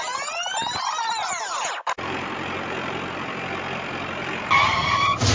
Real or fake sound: real